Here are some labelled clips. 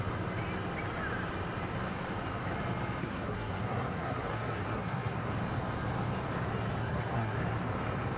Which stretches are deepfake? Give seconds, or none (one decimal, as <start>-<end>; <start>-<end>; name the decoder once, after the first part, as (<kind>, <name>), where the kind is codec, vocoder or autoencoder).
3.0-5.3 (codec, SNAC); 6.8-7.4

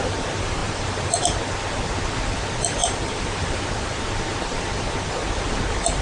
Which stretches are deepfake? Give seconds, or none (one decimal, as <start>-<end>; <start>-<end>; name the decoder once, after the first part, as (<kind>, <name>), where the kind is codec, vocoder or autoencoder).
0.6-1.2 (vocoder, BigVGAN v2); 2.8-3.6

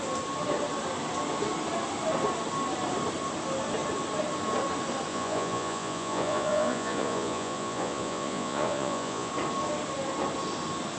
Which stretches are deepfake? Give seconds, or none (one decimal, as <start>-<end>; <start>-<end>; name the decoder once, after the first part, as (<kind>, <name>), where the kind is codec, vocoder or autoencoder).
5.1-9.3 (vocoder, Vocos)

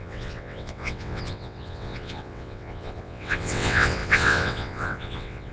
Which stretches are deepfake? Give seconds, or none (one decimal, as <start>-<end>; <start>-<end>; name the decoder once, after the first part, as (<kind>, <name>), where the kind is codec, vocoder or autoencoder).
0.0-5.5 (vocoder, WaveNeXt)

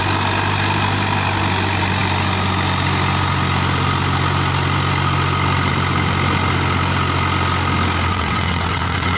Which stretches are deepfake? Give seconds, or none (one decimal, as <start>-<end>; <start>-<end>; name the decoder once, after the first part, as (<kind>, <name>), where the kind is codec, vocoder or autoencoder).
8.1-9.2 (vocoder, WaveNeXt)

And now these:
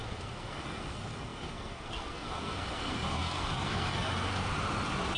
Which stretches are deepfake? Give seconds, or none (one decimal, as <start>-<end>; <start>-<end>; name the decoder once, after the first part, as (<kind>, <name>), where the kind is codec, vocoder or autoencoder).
0.0-4.3 (codec, SNAC)

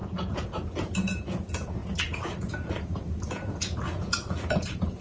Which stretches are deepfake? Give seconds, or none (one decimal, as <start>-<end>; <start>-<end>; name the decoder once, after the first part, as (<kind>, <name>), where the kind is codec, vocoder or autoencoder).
0.0-5.0 (vocoder, Vocos)

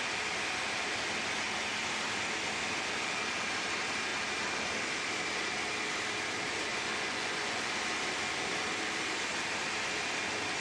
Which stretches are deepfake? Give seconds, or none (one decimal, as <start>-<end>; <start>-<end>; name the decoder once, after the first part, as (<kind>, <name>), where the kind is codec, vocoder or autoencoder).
6.7-7.7 (vocoder, Vocos)